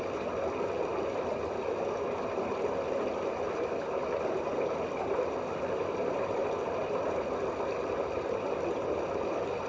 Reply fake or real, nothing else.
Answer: real